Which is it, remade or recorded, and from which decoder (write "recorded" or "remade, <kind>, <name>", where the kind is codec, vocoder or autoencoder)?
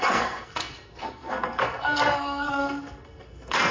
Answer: remade, codec, SNAC